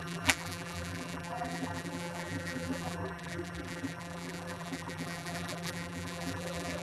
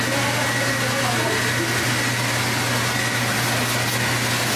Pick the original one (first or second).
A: second